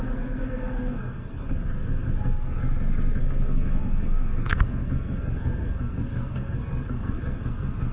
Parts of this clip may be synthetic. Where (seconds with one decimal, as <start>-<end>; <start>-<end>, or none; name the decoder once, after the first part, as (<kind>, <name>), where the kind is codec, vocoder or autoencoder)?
0.0-2.6 (codec, SNAC); 3.2-7.9